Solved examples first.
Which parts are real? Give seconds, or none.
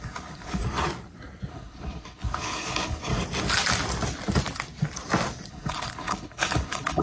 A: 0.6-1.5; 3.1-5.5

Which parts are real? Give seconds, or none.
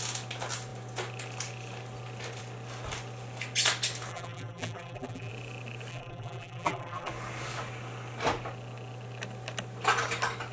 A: 0.0-4.1; 5.3-5.9; 7.1-10.5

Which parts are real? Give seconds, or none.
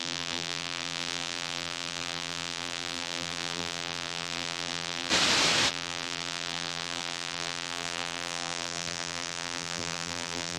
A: 5.1-5.7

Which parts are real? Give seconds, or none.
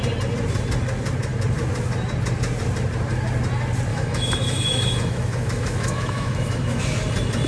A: 0.0-3.9; 6.8-7.5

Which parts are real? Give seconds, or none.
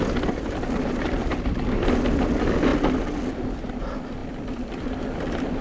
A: 0.0-5.6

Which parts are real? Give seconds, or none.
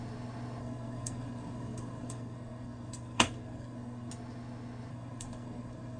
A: 0.0-0.6; 4.1-4.9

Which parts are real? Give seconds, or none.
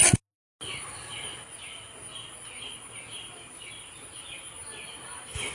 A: 0.0-5.5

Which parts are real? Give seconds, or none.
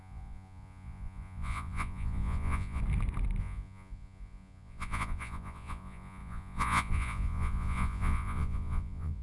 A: 2.8-3.4